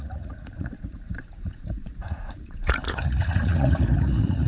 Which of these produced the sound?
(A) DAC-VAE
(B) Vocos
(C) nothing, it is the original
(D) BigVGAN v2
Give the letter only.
B